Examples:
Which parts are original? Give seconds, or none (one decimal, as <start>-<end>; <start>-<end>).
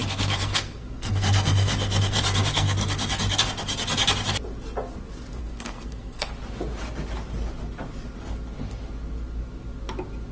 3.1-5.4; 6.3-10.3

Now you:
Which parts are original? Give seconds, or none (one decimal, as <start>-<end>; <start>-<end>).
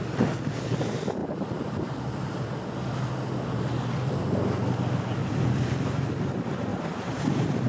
0.0-5.2; 5.7-6.7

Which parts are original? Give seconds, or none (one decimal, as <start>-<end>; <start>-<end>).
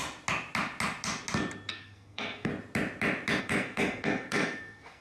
0.0-1.7; 2.5-3.4